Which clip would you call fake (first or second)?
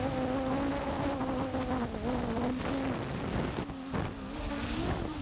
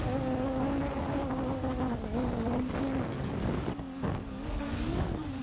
second